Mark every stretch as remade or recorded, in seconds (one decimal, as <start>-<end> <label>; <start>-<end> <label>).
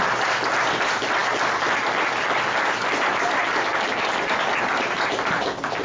0.0-5.8 recorded